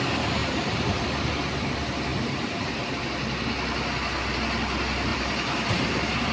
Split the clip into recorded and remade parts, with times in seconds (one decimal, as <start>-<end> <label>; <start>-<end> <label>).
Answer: 0.0-0.4 recorded; 0.4-1.0 remade; 1.0-2.1 recorded; 2.1-2.9 remade; 2.9-5.1 recorded; 5.1-6.3 remade